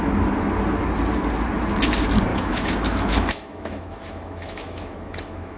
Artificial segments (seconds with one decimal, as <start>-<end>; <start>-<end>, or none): 2.3-5.6